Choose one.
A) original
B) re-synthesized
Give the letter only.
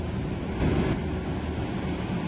A